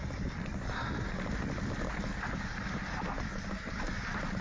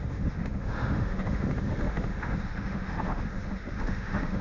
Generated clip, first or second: second